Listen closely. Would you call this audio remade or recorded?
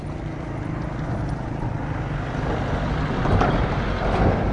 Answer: recorded